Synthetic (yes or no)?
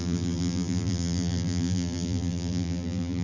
yes